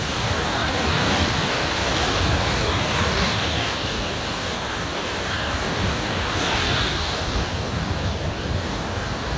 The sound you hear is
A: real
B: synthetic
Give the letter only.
B